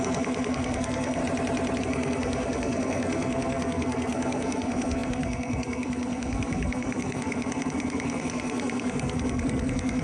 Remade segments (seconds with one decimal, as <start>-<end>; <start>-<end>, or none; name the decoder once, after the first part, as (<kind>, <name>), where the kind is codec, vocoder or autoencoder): 0.0-1.2 (codec, SNAC); 1.8-10.0